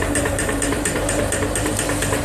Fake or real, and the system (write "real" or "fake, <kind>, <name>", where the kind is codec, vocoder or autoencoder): fake, vocoder, BigVGAN v2